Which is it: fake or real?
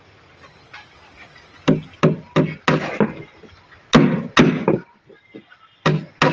real